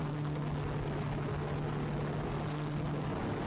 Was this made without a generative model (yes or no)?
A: yes